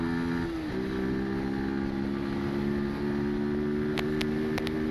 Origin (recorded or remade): recorded